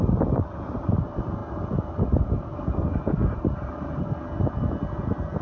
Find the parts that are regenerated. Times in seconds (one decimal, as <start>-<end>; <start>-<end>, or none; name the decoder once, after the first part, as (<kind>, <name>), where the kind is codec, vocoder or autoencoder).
none